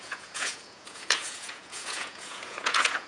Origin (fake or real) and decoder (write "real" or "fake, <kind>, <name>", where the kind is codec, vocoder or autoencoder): fake, vocoder, Vocos